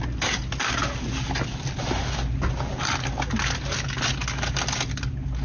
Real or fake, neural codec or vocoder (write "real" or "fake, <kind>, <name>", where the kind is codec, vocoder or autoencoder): real